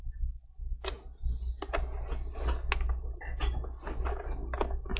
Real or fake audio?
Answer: real